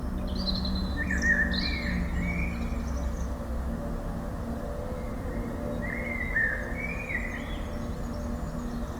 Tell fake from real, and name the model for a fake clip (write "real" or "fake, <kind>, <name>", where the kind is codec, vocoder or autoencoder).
real